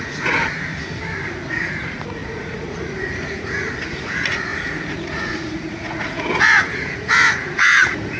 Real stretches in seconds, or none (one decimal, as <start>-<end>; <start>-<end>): 0.7-1.5